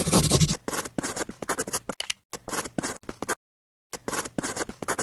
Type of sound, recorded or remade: recorded